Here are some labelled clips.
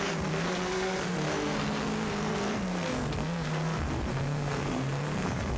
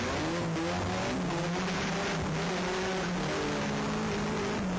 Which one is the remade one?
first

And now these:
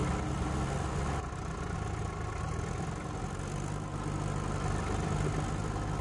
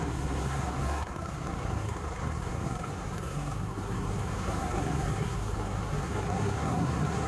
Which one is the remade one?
second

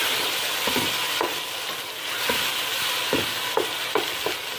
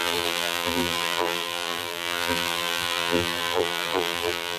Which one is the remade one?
second